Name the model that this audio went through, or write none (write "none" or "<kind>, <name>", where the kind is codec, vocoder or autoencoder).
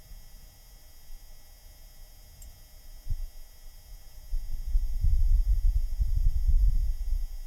none